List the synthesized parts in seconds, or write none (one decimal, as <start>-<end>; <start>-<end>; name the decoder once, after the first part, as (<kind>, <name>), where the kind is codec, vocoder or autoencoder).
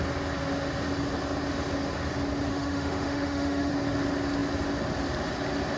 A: 2.5-3.7 (autoencoder, DAC-VAE)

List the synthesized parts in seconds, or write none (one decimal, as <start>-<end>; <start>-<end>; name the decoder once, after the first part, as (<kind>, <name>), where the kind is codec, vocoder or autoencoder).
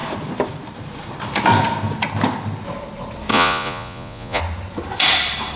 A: 3.3-4.4 (vocoder, Vocos)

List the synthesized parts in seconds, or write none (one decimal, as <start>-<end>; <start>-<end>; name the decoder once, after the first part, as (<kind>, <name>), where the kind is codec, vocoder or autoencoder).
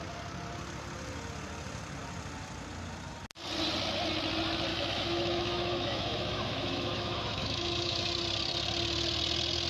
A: 4.7-8.1 (autoencoder, DAC-VAE)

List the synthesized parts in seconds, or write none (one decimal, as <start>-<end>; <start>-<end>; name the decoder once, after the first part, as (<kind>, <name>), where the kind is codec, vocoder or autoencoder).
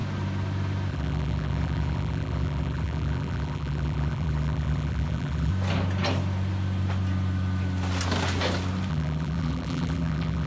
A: 0.9-5.5 (vocoder, BigVGAN v2); 8.9-10.5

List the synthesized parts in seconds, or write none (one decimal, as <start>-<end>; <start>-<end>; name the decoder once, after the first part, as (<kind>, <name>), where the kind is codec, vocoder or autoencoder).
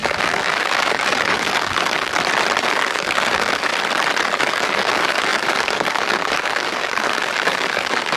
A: 0.0-2.1 (codec, DAC); 2.6-3.7; 4.4-8.2